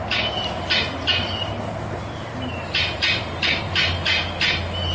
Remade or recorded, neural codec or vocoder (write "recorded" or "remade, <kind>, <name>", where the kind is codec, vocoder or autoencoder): recorded